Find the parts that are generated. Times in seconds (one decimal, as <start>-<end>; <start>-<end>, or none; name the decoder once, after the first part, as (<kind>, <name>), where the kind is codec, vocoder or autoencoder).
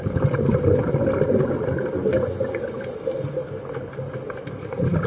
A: none